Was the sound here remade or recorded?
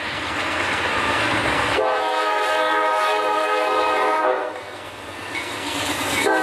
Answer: remade